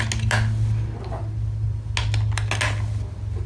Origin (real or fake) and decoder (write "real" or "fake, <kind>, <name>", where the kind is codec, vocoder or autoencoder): real